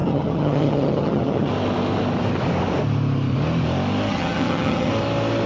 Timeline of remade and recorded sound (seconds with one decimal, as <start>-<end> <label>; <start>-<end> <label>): 0.0-1.5 remade; 1.5-4.1 recorded; 4.1-4.9 remade; 4.9-5.5 recorded